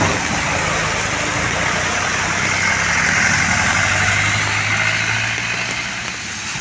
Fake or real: real